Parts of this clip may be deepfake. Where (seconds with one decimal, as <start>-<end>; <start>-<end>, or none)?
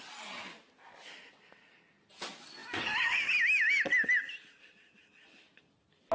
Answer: none